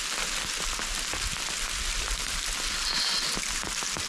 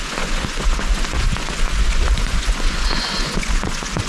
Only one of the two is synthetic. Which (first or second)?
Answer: second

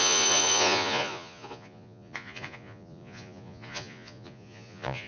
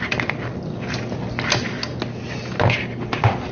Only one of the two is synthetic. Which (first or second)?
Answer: first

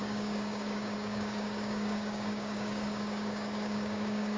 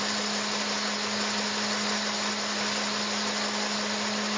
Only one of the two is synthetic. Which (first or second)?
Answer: first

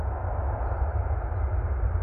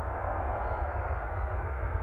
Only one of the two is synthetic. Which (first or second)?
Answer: second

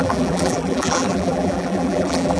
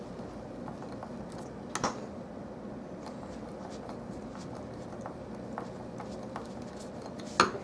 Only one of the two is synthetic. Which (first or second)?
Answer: first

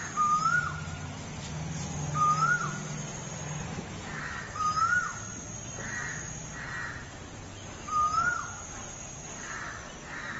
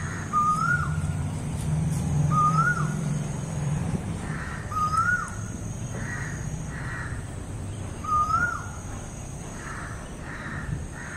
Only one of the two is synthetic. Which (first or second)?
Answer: second